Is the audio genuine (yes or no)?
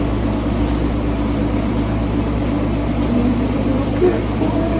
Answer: yes